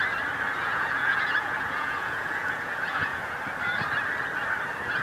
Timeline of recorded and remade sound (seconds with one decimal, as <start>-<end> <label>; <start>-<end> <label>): 0.0-0.5 recorded; 0.5-3.3 remade; 3.3-5.0 recorded